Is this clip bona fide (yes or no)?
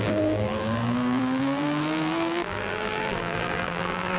no